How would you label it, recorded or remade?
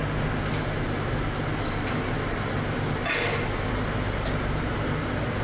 recorded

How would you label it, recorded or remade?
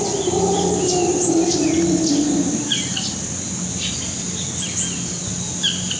recorded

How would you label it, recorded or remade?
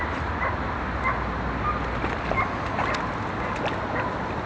recorded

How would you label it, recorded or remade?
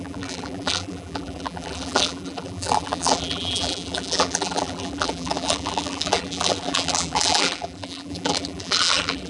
remade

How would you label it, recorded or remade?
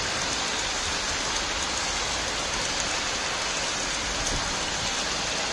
recorded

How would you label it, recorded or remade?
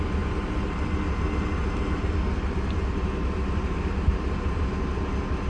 recorded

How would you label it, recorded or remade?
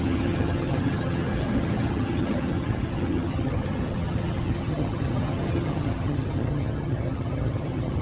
remade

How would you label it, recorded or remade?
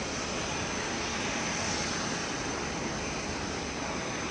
recorded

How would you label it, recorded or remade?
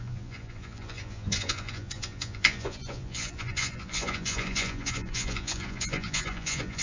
remade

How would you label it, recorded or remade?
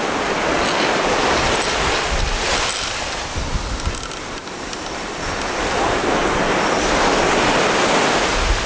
recorded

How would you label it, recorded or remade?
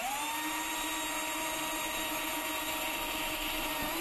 remade